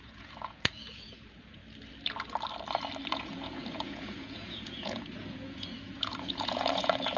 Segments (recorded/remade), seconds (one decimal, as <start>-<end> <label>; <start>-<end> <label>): 0.0-1.6 remade; 1.6-3.1 recorded; 3.1-7.2 remade